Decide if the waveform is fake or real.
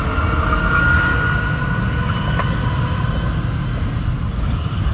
real